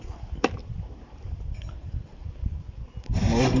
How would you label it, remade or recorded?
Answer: recorded